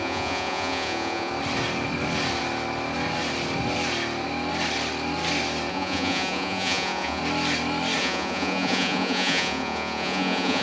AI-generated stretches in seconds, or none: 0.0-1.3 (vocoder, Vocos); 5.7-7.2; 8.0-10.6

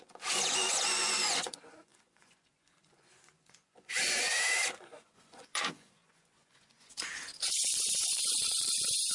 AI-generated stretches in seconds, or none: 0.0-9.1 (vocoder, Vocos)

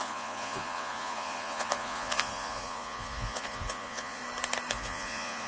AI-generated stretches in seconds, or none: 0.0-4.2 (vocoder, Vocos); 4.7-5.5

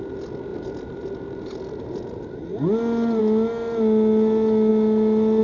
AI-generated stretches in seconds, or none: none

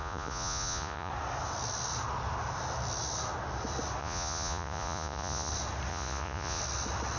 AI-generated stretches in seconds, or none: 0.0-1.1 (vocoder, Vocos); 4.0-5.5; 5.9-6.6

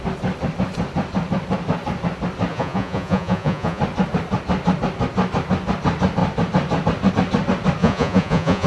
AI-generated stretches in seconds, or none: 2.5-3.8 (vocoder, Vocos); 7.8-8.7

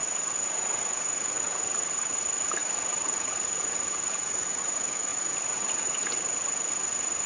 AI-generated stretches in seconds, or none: 0.0-7.3 (vocoder, Vocos)

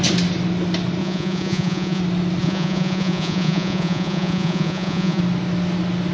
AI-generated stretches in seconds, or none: 1.0-2.0 (vocoder, Vocos); 2.4-5.2